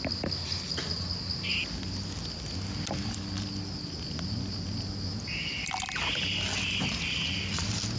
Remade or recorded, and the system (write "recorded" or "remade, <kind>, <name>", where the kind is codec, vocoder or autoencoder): recorded